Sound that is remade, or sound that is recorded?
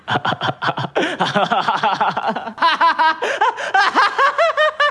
recorded